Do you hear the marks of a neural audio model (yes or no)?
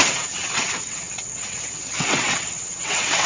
yes